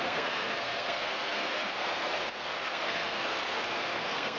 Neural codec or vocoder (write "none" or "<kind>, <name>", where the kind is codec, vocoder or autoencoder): codec, SNAC